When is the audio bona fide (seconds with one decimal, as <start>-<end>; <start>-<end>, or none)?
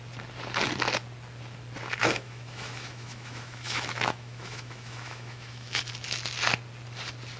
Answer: 0.0-2.0; 5.8-7.4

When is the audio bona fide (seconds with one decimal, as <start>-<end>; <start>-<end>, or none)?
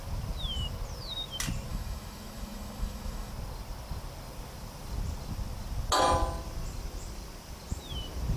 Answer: 0.0-1.7; 3.3-8.4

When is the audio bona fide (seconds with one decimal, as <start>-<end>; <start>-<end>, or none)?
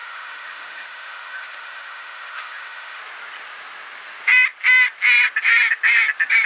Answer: 3.0-6.5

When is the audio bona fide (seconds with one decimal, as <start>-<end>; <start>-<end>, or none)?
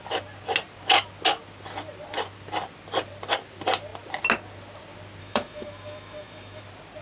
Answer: 0.0-5.2; 6.6-7.0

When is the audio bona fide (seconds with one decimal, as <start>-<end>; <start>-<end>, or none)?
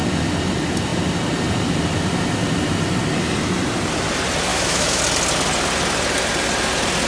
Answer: 0.0-4.5; 5.0-7.1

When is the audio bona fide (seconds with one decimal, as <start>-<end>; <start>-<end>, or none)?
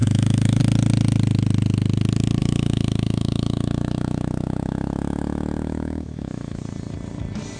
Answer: 0.6-2.4; 6.6-7.6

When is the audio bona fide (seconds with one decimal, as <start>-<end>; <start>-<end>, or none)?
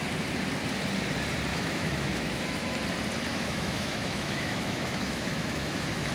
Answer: 0.0-1.5; 2.8-3.3